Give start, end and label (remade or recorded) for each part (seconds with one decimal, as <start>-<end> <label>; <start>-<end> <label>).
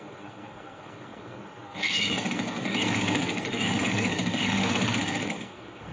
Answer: 0.0-5.9 remade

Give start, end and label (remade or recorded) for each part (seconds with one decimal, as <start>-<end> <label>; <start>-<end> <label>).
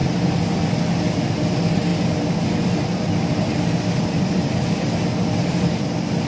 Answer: 0.0-1.9 remade; 1.9-2.7 recorded; 2.7-6.3 remade